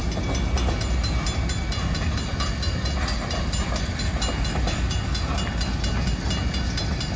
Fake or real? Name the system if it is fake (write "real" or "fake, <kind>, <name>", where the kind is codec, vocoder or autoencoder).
real